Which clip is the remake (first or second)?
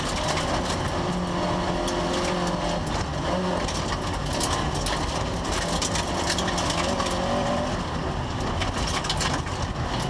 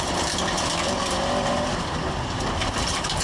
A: second